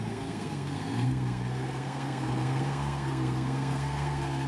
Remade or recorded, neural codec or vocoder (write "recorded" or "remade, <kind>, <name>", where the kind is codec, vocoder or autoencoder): remade, codec, SNAC